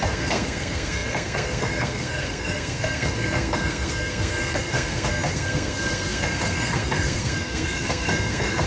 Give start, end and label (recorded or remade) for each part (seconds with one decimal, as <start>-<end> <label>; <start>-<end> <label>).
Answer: 0.0-8.7 remade